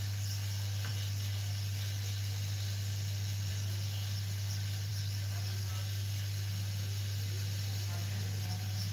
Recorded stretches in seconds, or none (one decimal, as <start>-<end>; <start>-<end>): 0.0-8.9